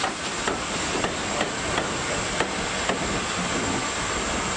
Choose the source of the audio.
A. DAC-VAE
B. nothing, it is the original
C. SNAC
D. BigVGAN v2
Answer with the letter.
B